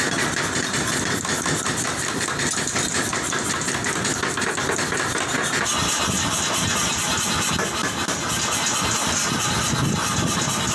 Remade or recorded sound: recorded